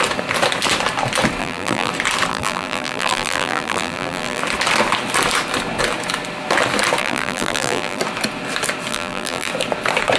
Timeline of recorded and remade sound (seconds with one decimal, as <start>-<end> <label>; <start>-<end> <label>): 0.0-1.4 recorded; 1.4-1.9 remade; 1.9-2.3 recorded; 2.3-4.4 remade; 4.4-7.0 recorded; 7.0-8.0 remade; 8.0-8.9 recorded; 8.9-9.5 remade; 9.5-10.2 recorded